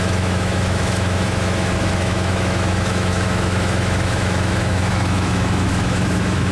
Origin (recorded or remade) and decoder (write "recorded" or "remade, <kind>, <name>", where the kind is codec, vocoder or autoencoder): remade, autoencoder, DAC-VAE